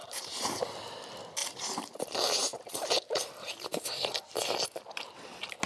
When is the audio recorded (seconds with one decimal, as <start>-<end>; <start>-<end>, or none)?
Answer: 0.6-1.4; 4.8-5.7